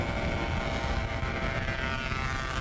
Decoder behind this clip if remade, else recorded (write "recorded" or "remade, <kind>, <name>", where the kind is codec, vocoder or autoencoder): recorded